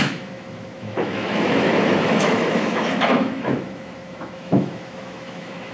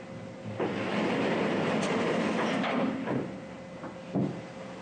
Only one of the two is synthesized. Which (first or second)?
first